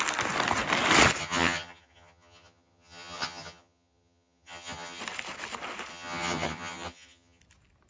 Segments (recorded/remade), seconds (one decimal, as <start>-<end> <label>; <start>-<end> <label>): 0.0-1.2 recorded; 1.2-5.0 remade; 5.0-5.9 recorded; 5.9-7.4 remade; 7.4-7.9 recorded